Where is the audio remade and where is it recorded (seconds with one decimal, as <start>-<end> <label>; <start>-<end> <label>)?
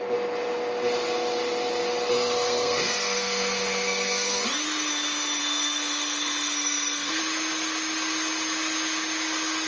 0.0-2.1 recorded; 2.1-4.4 remade; 4.4-5.4 recorded; 5.4-7.2 remade; 7.2-9.7 recorded